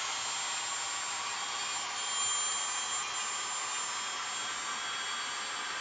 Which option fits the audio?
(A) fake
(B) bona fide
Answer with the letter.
B